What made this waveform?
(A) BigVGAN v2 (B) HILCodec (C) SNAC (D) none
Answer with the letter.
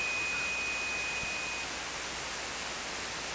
D